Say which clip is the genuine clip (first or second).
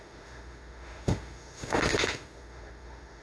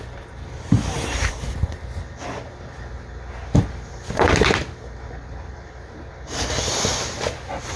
second